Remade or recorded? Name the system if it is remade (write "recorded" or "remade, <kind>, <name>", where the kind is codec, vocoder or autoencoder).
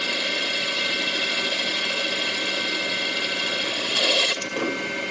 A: recorded